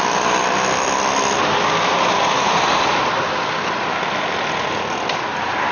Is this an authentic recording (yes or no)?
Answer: yes